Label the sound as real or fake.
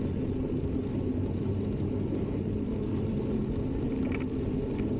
real